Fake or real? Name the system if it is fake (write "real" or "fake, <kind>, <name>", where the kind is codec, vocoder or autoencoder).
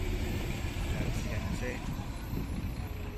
fake, vocoder, BigVGAN v2